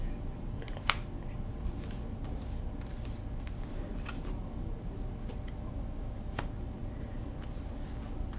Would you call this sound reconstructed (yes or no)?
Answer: no